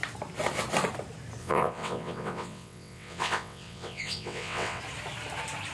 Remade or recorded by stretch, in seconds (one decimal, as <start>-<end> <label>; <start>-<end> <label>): 0.0-1.4 recorded; 1.4-4.8 remade; 4.8-5.7 recorded